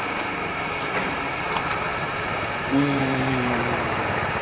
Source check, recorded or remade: remade